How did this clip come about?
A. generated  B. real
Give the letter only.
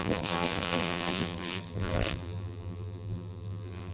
A